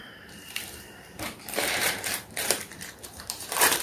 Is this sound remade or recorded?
remade